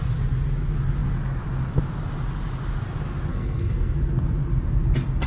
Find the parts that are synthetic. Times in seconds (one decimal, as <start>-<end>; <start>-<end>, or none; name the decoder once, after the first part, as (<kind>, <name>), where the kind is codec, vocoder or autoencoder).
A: 3.3-4.0 (codec, SNAC)